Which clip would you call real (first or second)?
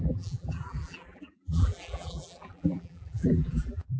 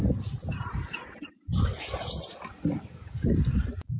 second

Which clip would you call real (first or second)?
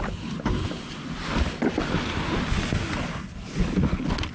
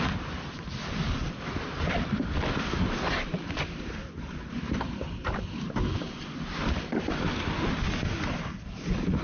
first